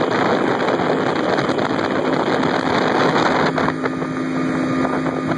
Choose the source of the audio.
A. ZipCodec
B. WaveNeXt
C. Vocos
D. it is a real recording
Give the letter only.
D